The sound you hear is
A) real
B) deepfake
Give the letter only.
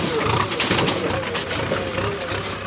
A